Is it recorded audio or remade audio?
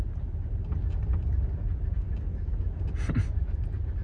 recorded